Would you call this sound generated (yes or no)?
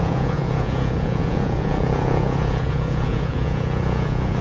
yes